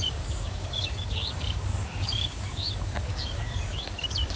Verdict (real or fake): fake